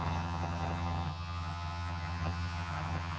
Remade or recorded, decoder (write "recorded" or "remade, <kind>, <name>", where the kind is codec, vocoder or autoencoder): remade, vocoder, HiFi-GAN